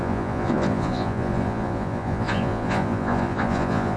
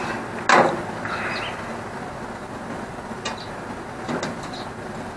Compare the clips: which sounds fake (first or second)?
first